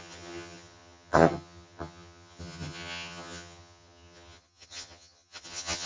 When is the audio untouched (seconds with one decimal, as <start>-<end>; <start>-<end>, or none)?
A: none